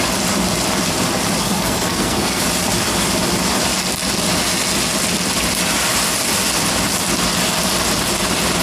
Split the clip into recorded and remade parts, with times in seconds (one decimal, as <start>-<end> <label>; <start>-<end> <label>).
0.0-1.4 recorded; 1.4-2.4 remade; 2.4-8.6 recorded